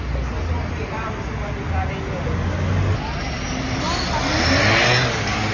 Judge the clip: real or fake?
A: real